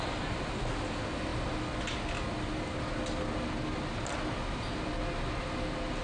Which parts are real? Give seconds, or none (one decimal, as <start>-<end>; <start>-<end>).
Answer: 0.0-6.0